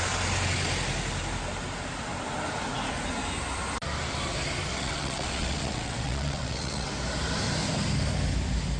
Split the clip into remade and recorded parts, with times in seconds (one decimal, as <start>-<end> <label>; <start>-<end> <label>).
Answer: 0.0-4.7 recorded; 4.7-6.9 remade; 6.9-8.8 recorded